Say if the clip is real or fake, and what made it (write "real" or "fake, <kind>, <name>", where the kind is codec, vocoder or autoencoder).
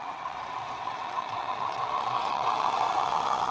fake, vocoder, WaveNeXt